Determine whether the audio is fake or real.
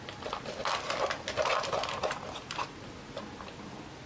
real